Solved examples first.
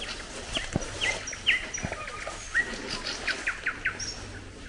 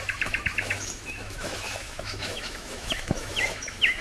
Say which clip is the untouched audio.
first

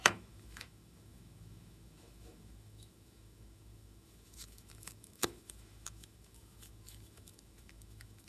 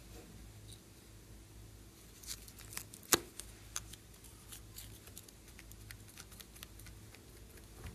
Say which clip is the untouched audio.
second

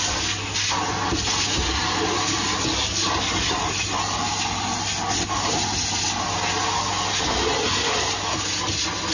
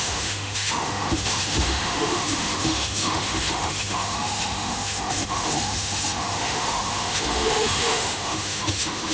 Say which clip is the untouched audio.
first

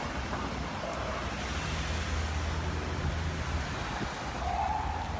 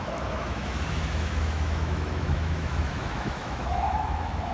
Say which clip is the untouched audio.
first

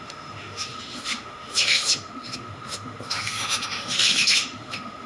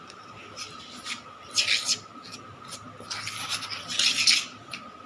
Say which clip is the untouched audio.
second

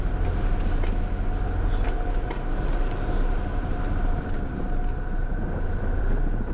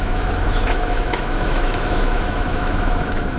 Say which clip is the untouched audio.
first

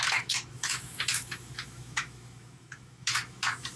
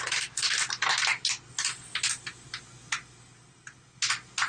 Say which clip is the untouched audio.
second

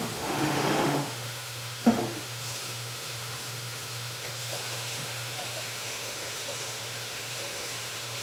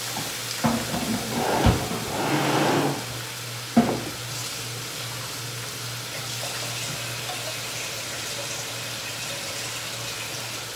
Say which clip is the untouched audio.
second